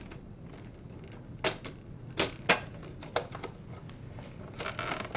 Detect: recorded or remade recorded